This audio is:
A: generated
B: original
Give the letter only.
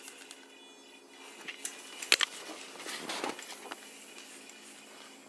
B